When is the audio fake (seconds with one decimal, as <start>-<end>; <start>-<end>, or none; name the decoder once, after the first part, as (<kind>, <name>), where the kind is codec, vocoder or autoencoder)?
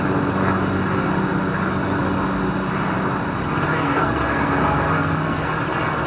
3.7-5.5 (codec, SNAC)